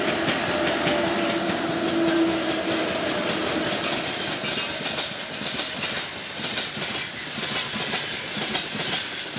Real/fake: real